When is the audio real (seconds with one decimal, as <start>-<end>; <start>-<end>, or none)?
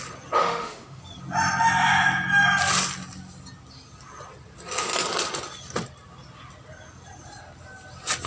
0.0-0.4; 1.0-8.3